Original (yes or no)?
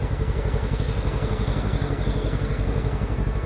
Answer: no